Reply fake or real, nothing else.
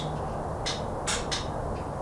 real